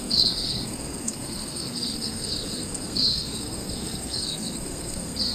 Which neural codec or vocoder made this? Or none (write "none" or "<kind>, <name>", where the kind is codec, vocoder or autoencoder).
codec, SNAC